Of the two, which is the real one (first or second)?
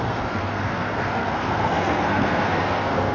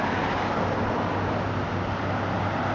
second